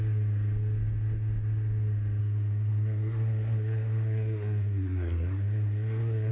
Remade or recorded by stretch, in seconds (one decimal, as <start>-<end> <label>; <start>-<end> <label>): 0.0-2.2 recorded; 2.2-6.3 remade